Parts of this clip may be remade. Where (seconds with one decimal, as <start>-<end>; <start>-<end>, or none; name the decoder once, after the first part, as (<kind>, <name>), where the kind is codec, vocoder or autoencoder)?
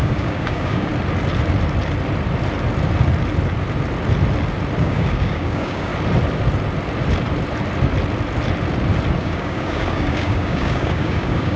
0.0-0.9 (codec, DAC); 4.8-5.9; 9.2-11.6